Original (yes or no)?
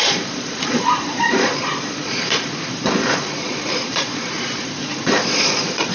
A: no